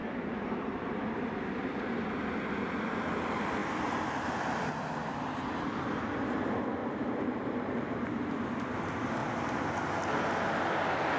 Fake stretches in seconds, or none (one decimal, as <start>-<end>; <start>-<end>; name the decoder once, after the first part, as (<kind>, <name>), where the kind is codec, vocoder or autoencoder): 0.0-1.5 (vocoder, BigVGAN v2); 6.8-8.3; 9.2-10.0